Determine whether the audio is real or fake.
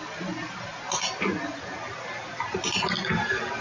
real